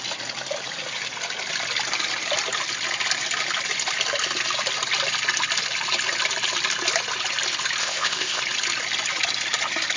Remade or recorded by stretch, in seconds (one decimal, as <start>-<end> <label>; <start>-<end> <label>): 0.0-7.8 recorded; 7.8-8.4 remade; 8.4-10.0 recorded